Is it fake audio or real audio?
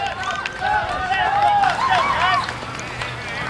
real